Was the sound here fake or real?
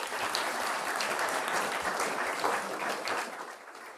fake